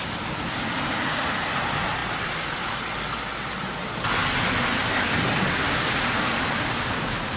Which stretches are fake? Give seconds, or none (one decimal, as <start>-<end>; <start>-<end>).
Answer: none